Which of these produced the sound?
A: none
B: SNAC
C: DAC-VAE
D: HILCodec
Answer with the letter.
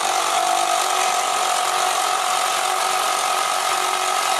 A